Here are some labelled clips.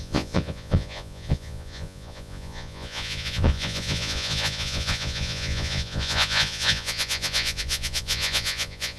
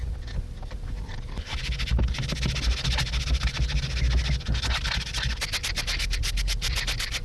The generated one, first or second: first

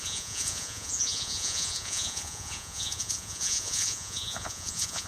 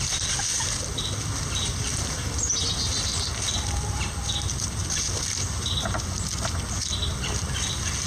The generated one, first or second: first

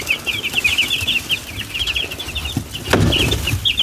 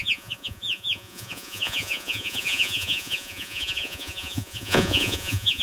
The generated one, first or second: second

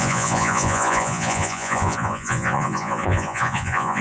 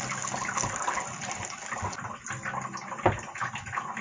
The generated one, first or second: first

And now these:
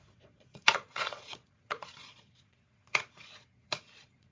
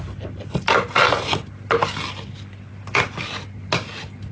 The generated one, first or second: first